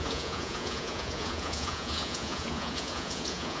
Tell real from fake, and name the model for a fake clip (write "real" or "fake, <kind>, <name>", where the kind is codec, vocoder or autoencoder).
fake, vocoder, Vocos